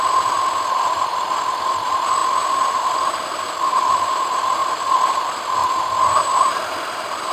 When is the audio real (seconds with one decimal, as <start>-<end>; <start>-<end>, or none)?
2.2-3.1; 4.6-5.1; 5.6-7.3